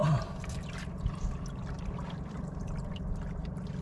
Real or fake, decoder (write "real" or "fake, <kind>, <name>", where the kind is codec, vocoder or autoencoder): fake, vocoder, BigVGAN v2